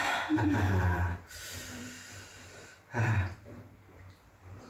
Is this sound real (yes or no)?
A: no